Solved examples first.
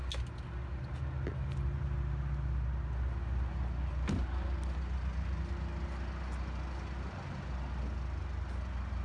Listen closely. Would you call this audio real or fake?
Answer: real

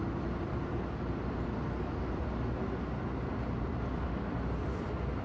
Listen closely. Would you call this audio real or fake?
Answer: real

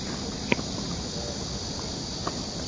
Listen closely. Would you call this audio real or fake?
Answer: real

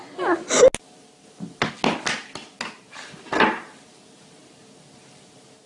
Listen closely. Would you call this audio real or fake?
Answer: real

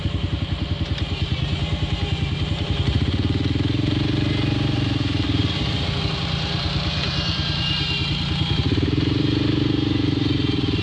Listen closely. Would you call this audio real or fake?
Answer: fake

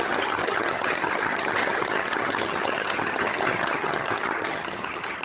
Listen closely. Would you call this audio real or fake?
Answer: fake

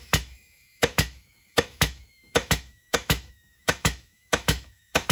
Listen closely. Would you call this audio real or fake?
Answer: fake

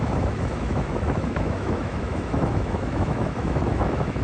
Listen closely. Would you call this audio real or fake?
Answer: fake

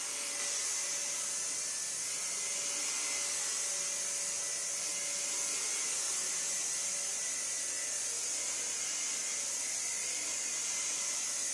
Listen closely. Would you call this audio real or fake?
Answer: real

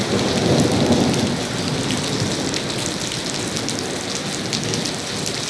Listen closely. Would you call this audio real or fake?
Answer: real